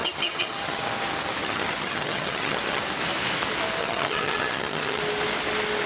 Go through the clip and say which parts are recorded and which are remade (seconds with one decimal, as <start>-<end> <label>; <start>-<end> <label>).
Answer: 0.0-0.8 remade; 0.8-1.4 recorded; 1.4-2.8 remade; 2.8-3.8 recorded; 3.8-5.0 remade; 5.0-5.9 recorded